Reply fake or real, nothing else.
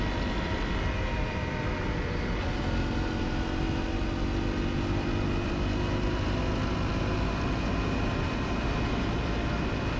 real